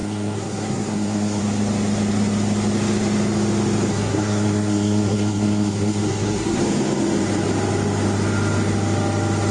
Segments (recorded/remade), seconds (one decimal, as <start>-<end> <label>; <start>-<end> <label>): 0.0-1.4 remade; 1.4-3.9 recorded; 3.9-6.6 remade; 6.6-9.5 recorded